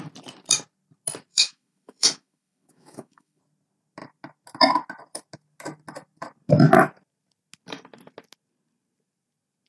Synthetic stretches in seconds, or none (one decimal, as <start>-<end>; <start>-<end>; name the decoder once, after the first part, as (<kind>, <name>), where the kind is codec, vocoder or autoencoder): 1.3-3.4 (autoencoder, DAC-VAE)